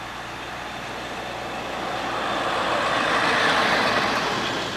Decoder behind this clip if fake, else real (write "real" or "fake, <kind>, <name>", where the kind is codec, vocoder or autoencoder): real